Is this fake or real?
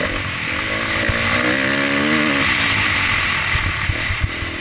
real